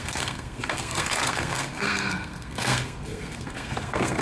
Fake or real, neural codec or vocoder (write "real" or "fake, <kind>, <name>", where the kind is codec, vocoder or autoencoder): fake, codec, SNAC